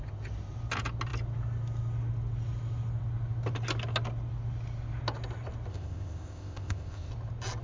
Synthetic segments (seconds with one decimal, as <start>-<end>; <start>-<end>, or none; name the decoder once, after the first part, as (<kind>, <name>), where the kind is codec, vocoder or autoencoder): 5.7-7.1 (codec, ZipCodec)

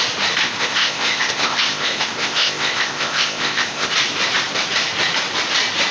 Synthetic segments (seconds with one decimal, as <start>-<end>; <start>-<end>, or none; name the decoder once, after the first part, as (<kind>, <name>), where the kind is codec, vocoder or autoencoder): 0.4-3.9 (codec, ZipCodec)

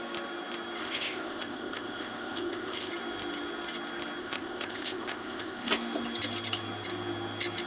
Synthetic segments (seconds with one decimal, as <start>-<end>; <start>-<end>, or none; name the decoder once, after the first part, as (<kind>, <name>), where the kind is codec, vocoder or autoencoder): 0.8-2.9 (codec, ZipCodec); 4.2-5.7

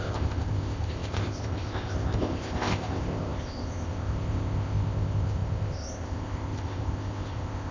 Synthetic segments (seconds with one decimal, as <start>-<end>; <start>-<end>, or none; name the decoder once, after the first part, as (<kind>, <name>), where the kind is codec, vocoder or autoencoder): 0.0-7.7 (codec, ZipCodec)

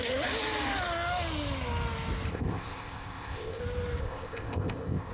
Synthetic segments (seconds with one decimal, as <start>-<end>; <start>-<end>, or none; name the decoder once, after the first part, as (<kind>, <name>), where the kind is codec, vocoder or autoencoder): 2.3-3.6 (codec, ZipCodec); 4.0-5.1

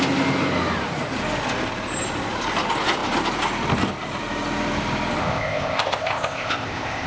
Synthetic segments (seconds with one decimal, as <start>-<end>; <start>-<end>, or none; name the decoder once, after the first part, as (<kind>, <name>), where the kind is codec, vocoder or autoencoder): 5.2-7.1 (codec, ZipCodec)

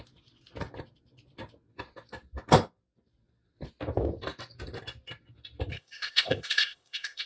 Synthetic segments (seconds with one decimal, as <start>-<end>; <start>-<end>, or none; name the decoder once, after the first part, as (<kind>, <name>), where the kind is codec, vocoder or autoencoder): 5.7-7.3 (codec, ZipCodec)

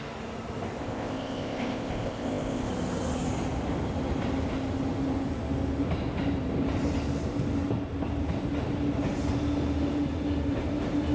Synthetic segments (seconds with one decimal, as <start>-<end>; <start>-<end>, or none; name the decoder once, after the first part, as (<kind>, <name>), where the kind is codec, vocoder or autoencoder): 0.8-2.7 (codec, ZipCodec)